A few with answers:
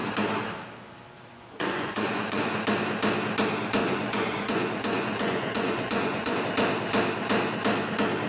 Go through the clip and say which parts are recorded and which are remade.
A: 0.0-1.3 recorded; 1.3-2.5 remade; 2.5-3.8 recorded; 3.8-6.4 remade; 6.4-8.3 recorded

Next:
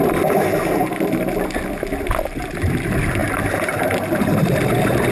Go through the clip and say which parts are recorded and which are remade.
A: 0.0-5.1 recorded

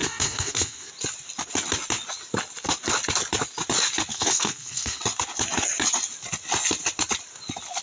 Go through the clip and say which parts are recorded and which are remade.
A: 0.0-0.9 remade; 0.9-4.1 recorded; 4.1-5.0 remade; 5.0-7.8 recorded

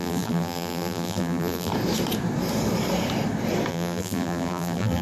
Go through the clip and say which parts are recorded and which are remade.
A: 0.0-1.7 remade; 1.7-3.7 recorded; 3.7-5.0 remade

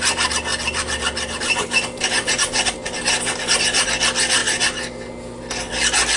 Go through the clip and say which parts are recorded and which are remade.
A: 0.0-0.5 recorded; 0.5-3.9 remade; 3.9-6.2 recorded